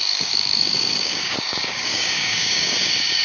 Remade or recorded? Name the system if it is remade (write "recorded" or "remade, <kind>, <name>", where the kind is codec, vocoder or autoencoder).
remade, codec, DAC